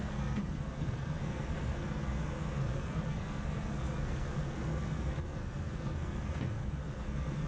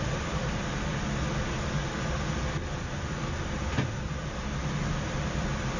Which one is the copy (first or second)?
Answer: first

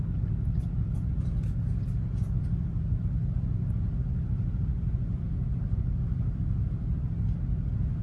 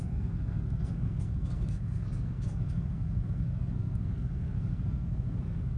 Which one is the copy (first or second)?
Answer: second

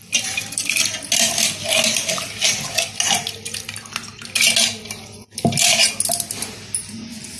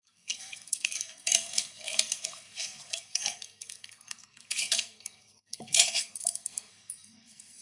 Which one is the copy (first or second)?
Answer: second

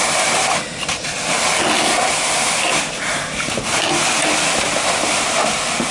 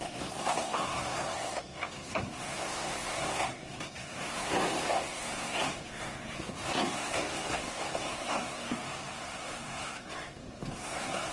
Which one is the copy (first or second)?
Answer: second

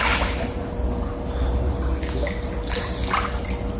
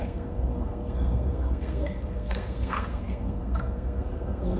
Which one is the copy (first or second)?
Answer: second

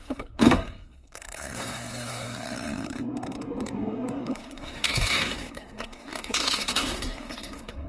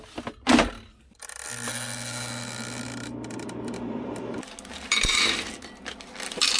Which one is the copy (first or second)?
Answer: first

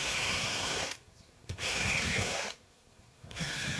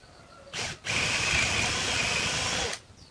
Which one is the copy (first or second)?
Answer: first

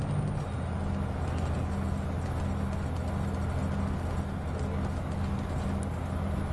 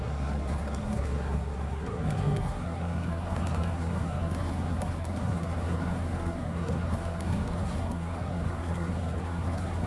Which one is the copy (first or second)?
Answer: second